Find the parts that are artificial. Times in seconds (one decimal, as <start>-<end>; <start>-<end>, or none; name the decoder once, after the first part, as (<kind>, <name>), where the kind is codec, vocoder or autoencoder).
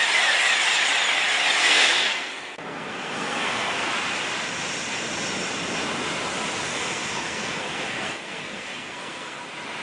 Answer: 1.6-3.9 (codec, SNAC); 6.7-9.4